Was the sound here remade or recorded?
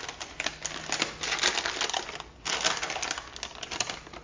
recorded